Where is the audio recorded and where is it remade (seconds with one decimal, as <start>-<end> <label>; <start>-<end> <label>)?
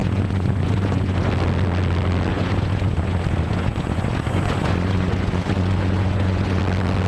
0.0-1.3 remade; 1.3-2.3 recorded; 2.3-6.6 remade; 6.6-7.1 recorded